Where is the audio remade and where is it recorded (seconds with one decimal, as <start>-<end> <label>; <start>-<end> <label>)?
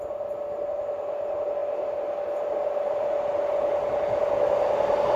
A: 0.0-5.2 recorded